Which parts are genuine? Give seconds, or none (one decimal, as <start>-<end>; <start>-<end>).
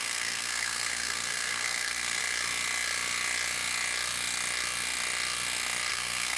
2.2-5.9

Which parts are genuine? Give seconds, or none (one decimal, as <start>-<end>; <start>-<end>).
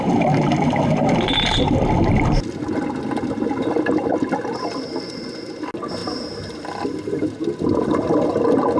0.0-8.8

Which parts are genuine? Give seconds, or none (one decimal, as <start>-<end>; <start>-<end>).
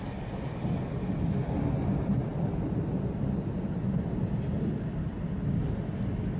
0.0-6.4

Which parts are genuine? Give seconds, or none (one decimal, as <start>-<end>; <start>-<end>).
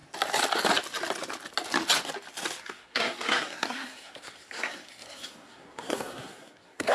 0.0-2.6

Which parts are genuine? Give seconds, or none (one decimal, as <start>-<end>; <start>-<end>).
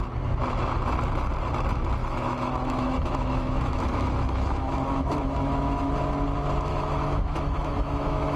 0.0-2.0; 5.9-6.7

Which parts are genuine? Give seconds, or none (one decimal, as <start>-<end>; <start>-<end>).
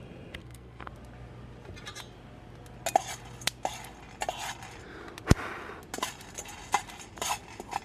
0.0-0.4; 0.9-7.8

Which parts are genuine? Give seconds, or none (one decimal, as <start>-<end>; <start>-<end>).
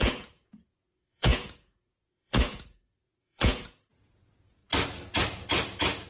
4.6-6.1